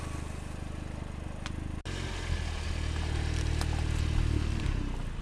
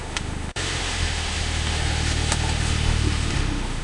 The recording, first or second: first